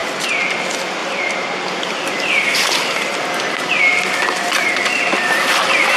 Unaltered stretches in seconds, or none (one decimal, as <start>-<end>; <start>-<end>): 0.0-6.0